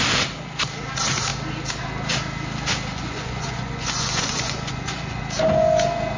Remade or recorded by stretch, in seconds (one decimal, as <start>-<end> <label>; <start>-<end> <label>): 0.0-2.9 recorded; 2.9-5.2 remade; 5.2-6.2 recorded